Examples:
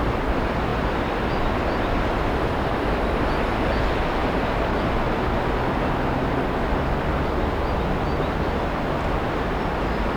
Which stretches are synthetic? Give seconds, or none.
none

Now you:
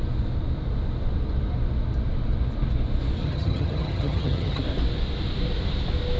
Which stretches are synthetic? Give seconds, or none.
3.2-4.6 (vocoder, HiFi-GAN)

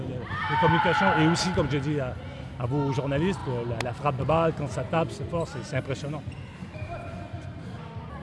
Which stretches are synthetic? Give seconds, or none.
none